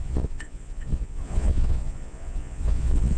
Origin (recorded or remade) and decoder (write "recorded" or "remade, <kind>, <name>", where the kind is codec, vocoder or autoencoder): remade, vocoder, Vocos